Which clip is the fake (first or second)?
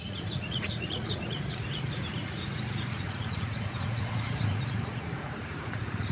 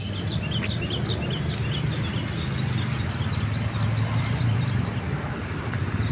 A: first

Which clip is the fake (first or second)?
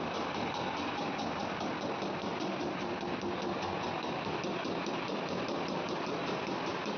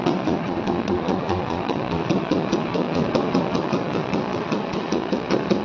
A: second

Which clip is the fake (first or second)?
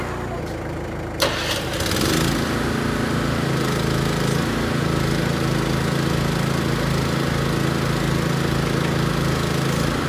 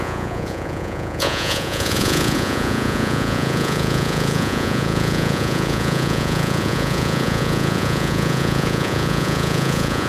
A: second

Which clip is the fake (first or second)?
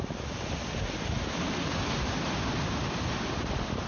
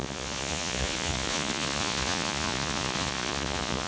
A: second